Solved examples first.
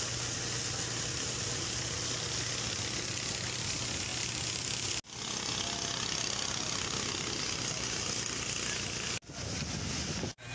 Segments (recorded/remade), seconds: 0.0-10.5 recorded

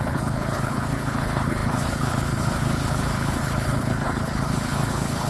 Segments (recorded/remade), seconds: 0.0-5.3 remade

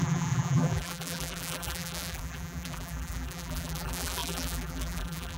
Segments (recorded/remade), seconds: 0.0-5.4 remade

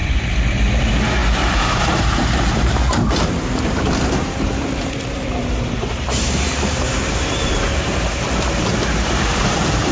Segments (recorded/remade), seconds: 0.0-9.9 remade

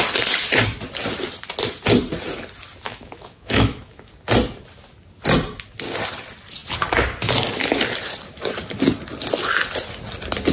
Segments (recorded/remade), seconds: 0.0-2.9 recorded; 2.9-4.1 remade; 4.1-10.5 recorded

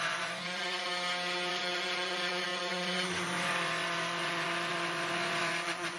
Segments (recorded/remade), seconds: 0.0-0.9 remade; 0.9-1.5 recorded; 1.5-6.0 remade

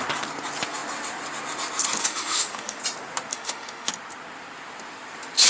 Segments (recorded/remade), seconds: 0.0-2.0 recorded; 2.0-2.8 remade; 2.8-3.3 recorded; 3.3-3.9 remade; 3.9-5.5 recorded